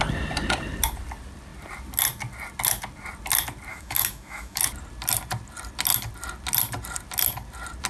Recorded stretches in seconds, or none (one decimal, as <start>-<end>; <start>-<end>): 0.0-3.7; 4.6-7.9